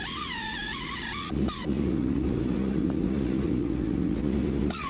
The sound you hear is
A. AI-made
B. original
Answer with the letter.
A